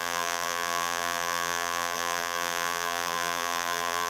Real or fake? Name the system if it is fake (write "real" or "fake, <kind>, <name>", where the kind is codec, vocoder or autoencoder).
fake, vocoder, BigVGAN v2